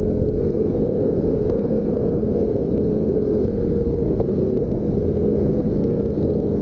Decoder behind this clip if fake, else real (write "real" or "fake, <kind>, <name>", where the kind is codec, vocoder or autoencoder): fake, codec, SNAC